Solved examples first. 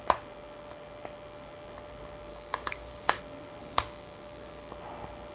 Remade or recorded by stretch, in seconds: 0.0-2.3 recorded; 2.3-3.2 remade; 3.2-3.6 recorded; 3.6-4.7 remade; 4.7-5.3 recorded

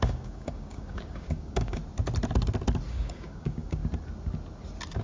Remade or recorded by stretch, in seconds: 0.0-1.8 remade; 1.8-2.9 recorded; 2.9-3.8 remade; 3.8-5.0 recorded

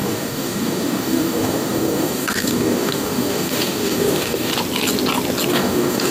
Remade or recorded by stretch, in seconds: 0.0-4.5 remade; 4.5-5.5 recorded; 5.5-6.1 remade